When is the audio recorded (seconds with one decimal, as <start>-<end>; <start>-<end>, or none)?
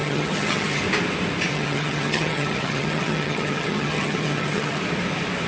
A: 0.8-1.5; 4.8-5.5